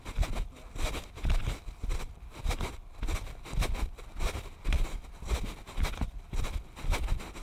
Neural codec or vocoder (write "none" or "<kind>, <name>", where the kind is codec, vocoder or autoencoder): none